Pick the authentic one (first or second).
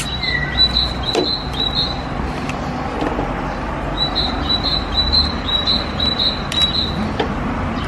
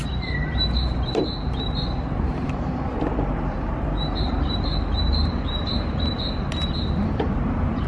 first